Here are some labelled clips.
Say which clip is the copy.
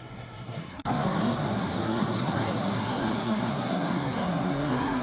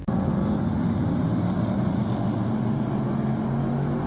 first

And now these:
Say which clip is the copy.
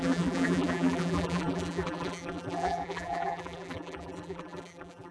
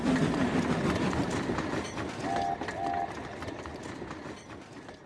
first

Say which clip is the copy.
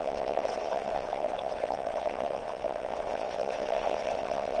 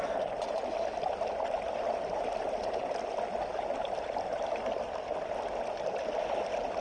first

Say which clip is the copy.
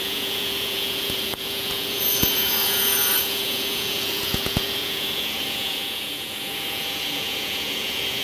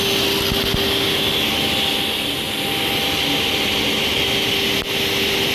first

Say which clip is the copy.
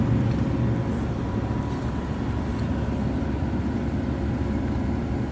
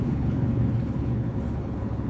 second